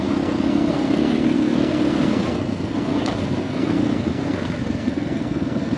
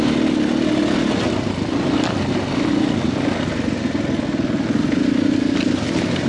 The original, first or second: second